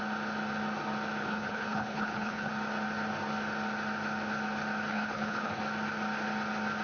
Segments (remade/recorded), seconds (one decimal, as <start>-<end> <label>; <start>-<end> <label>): 0.0-1.2 recorded; 1.2-2.5 remade; 2.5-4.9 recorded; 4.9-5.6 remade; 5.6-6.8 recorded